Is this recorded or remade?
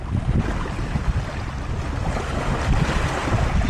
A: recorded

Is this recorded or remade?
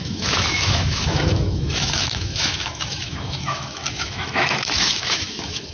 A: remade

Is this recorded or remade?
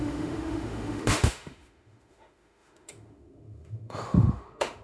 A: remade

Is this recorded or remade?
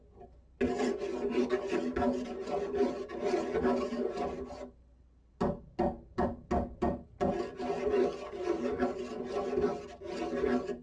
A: recorded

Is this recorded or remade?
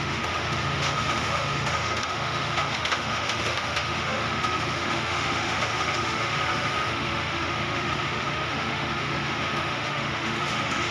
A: remade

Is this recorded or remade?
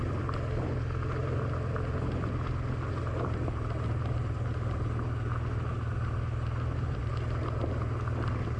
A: recorded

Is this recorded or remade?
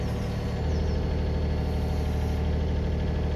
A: recorded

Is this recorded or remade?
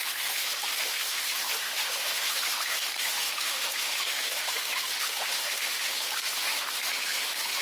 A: remade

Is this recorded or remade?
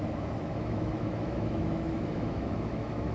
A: remade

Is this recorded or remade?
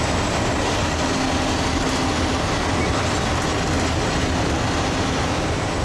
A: recorded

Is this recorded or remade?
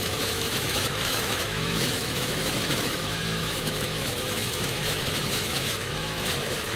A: remade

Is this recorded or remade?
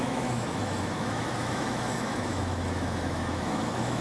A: remade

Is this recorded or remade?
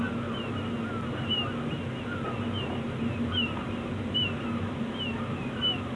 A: recorded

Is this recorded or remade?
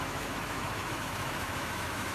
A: remade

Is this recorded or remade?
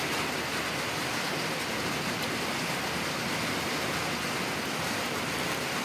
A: recorded